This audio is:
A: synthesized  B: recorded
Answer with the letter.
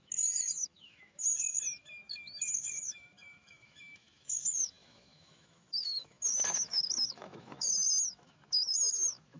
A